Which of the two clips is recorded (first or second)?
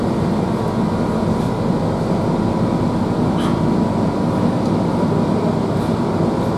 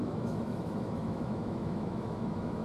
first